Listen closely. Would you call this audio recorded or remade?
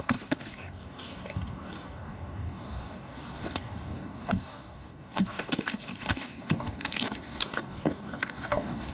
remade